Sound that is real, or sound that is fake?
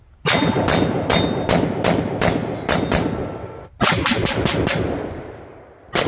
real